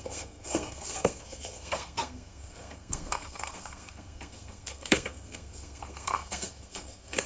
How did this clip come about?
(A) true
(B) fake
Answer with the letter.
B